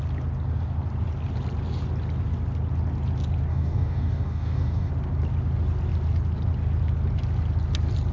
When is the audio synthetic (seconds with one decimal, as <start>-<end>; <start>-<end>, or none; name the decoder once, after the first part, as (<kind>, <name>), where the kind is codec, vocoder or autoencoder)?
3.5-4.9 (codec, DAC)